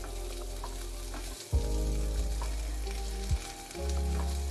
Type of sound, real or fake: real